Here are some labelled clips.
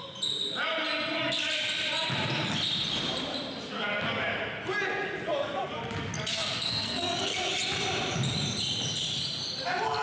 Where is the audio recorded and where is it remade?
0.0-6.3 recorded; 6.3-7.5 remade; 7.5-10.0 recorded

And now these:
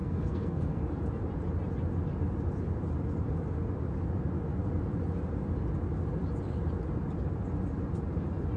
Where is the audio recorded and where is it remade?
0.0-0.8 remade; 0.8-8.6 recorded

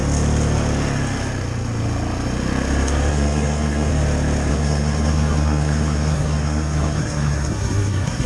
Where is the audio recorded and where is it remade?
0.0-3.1 recorded; 3.1-3.9 remade; 3.9-4.5 recorded; 4.5-8.3 remade

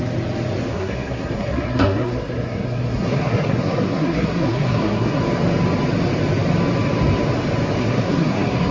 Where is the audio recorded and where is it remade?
0.0-0.7 recorded; 0.7-5.2 remade; 5.2-7.8 recorded; 7.8-8.7 remade

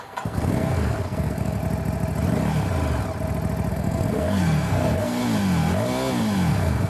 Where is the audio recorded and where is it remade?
0.0-1.6 remade; 1.6-3.7 recorded; 3.7-5.2 remade; 5.2-6.5 recorded; 6.5-6.9 remade

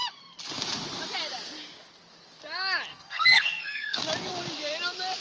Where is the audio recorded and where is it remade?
0.0-2.9 recorded; 2.9-4.0 remade; 4.0-5.2 recorded

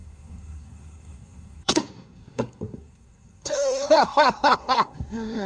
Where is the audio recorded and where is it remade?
0.0-5.5 remade

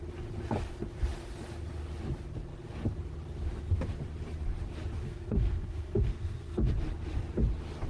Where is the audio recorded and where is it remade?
0.0-5.0 recorded; 5.0-6.7 remade; 6.7-7.9 recorded